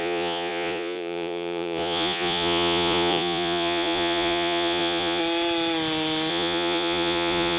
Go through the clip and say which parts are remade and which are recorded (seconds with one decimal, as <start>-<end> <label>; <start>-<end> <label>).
0.0-5.2 remade; 5.2-6.3 recorded; 6.3-7.6 remade